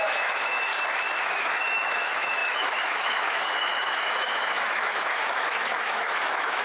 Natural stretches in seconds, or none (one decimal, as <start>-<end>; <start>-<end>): 0.7-1.2